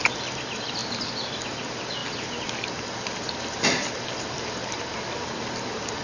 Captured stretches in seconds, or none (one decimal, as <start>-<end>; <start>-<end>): 0.0-6.0